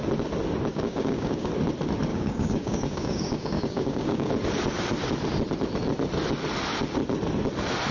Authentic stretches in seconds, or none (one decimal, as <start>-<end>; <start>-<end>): 0.0-0.7; 1.5-2.1; 4.3-7.9